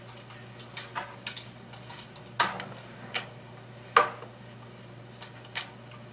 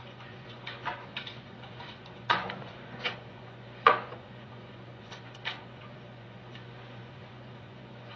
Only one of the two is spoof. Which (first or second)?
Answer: second